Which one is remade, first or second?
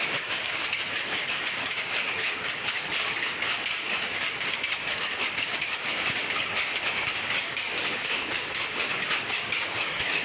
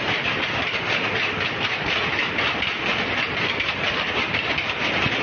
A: first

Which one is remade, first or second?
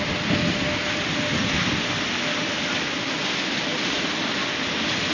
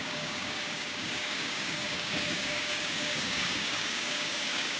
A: second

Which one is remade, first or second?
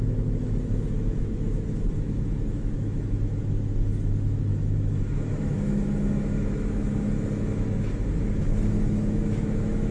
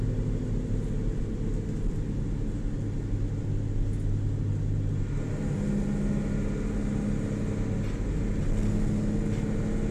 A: first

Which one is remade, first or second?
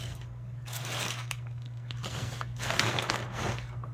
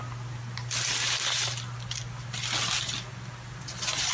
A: first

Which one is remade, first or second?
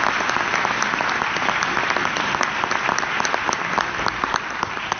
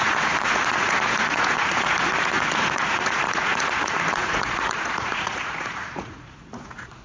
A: second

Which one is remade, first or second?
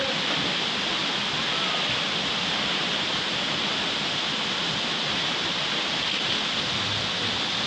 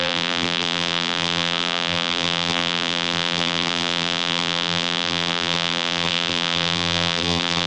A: second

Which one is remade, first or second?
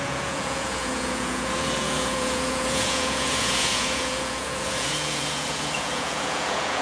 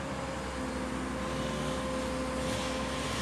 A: first